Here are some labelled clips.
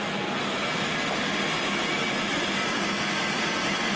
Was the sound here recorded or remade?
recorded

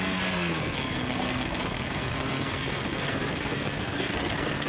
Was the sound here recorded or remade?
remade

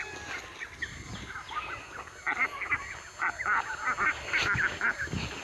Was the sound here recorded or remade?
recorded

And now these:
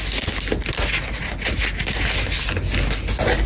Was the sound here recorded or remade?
recorded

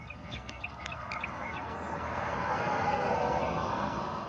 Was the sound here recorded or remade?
remade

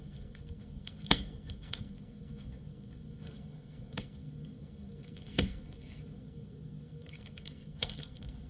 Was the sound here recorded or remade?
remade